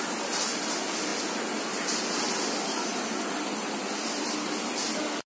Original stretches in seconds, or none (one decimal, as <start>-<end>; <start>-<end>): 0.0-5.3